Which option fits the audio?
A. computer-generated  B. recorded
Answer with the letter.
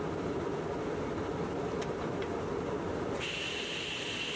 B